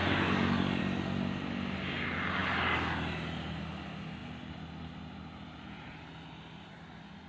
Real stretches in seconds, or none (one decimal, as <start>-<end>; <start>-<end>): 0.8-7.3